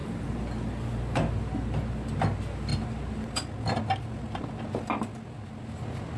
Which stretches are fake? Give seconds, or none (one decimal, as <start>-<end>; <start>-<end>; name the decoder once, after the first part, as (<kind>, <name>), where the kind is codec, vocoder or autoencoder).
none